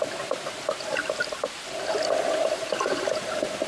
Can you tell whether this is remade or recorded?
recorded